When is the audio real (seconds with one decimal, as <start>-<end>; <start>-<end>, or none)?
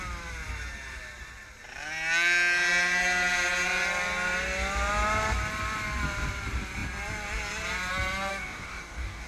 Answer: 0.0-8.3